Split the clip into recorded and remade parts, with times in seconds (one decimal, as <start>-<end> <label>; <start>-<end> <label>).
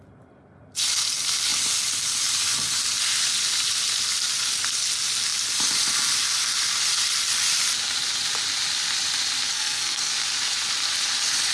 0.0-9.5 recorded; 9.5-10.1 remade; 10.1-11.5 recorded